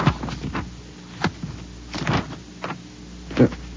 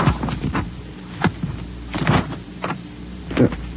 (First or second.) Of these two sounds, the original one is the first